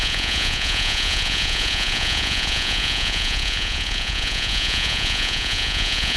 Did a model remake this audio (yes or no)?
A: yes